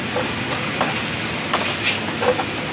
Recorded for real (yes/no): yes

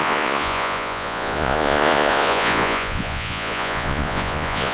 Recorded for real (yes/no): no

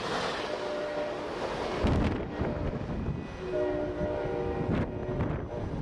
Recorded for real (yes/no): yes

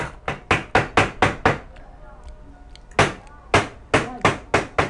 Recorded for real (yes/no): yes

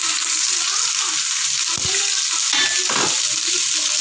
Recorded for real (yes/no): yes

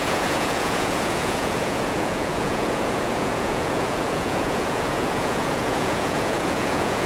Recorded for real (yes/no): no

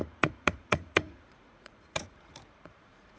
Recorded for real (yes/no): no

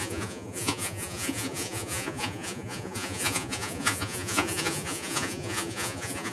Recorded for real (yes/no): no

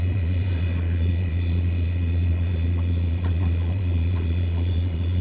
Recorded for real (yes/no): no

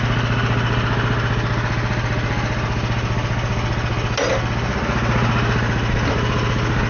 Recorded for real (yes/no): yes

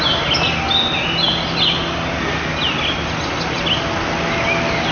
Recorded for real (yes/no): yes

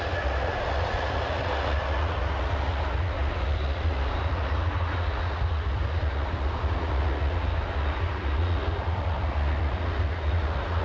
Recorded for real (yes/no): no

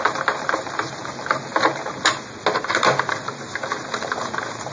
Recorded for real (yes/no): yes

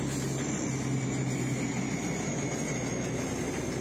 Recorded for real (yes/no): yes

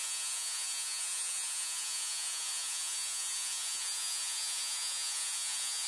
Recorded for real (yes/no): no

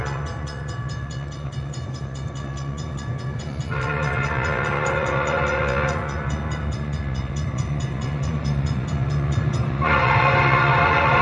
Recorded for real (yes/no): no